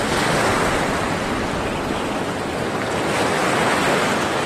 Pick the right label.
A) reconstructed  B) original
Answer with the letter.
B